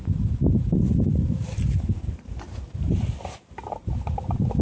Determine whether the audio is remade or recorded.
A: remade